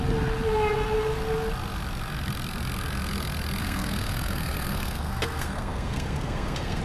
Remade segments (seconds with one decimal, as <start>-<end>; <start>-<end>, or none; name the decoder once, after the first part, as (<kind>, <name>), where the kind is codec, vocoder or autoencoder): 3.6-6.8 (codec, SNAC)